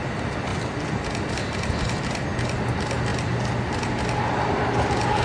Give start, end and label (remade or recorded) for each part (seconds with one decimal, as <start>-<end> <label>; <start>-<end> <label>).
0.0-5.2 recorded